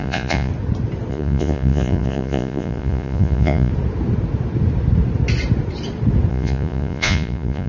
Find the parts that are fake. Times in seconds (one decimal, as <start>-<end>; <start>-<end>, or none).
0.0-0.5; 1.1-3.7; 6.3-7.7